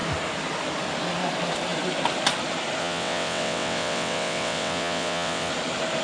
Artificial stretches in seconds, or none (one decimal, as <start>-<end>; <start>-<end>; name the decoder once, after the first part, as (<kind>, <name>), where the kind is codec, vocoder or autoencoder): 2.8-5.5 (vocoder, WaveNeXt)